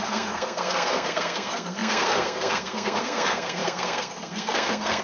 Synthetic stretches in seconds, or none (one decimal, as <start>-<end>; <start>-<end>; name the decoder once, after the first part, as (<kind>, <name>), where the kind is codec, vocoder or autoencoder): 0.0-5.0 (codec, SNAC)